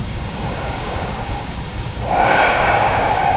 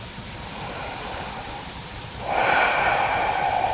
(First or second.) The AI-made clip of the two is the first